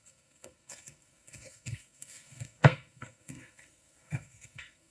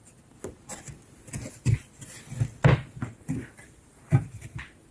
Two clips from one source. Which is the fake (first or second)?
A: first